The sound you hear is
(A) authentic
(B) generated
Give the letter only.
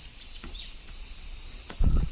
B